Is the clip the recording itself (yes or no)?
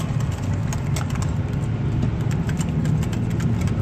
yes